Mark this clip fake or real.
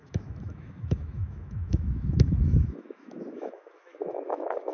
fake